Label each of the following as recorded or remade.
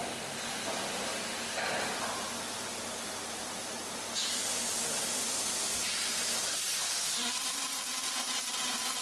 recorded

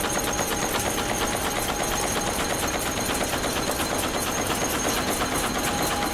recorded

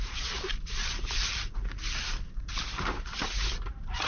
remade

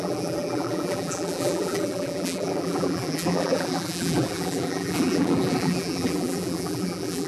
remade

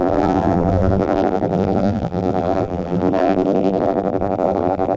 remade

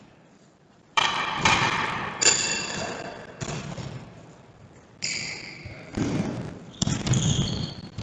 remade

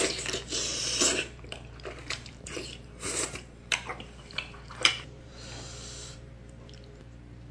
remade